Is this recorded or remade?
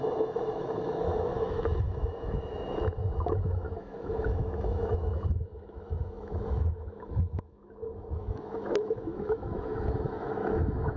remade